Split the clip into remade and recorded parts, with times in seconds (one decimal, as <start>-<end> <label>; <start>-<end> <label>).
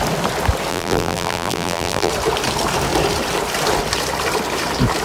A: 0.0-0.7 recorded; 0.7-2.1 remade; 2.1-5.0 recorded